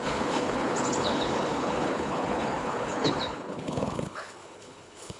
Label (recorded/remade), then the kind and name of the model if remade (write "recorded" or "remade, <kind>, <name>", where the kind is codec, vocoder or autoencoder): remade, codec, HILCodec